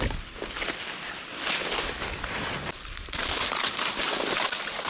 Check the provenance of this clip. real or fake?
real